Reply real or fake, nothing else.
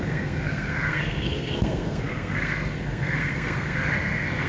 fake